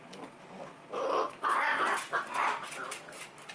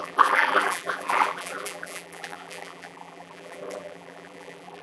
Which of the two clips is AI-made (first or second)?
second